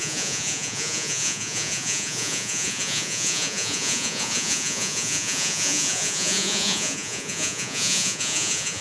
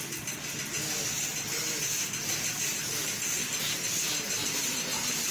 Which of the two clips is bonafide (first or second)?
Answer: second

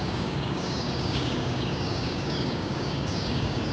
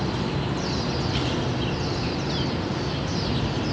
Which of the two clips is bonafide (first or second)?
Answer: second